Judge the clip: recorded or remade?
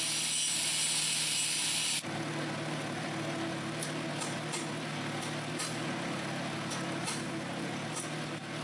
recorded